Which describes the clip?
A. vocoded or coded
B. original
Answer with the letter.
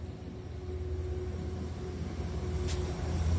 B